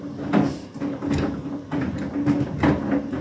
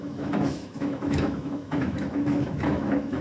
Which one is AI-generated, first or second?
second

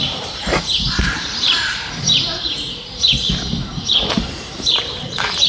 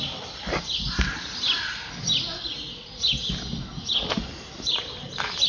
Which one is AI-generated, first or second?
first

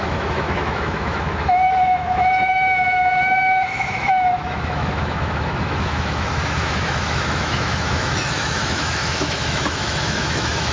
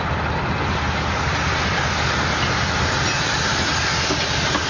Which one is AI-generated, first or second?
first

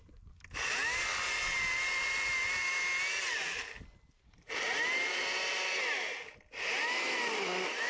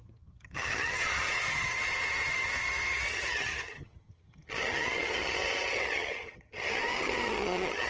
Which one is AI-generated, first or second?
second